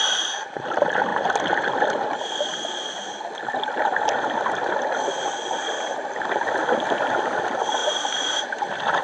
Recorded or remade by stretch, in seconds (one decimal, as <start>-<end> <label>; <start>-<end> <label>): 0.0-7.8 recorded; 7.8-8.4 remade; 8.4-9.0 recorded